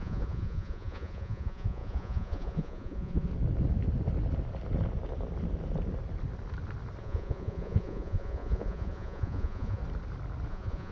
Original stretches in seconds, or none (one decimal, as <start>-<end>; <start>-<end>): 3.3-7.0; 9.8-10.5